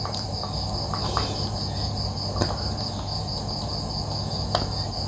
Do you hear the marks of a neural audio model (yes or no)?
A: no